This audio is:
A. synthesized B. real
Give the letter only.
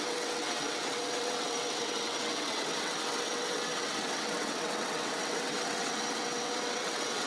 A